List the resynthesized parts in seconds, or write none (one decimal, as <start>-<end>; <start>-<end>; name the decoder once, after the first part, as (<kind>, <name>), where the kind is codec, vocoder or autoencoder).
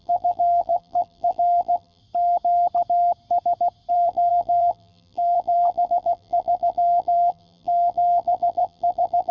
0.0-2.0 (vocoder, BigVGAN v2); 3.9-9.3